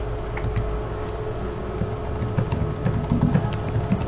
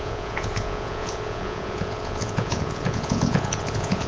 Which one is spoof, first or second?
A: second